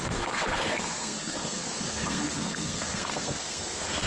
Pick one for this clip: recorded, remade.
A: remade